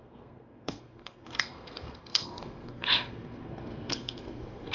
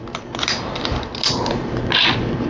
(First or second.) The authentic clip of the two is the second